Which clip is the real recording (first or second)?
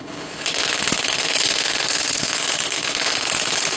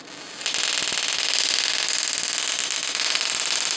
second